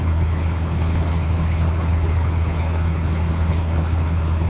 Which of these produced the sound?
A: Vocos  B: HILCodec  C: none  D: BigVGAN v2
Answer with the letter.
B